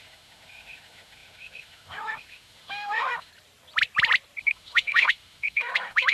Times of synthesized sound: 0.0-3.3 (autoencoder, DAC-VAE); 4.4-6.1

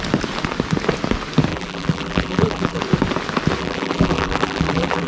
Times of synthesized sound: 1.5-2.8 (vocoder, BigVGAN v2); 3.6-5.1

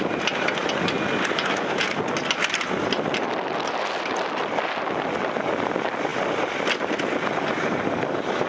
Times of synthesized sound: none

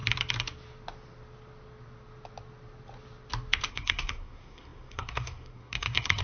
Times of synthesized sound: 3.7-6.2 (codec, SNAC)